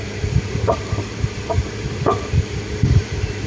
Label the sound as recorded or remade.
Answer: remade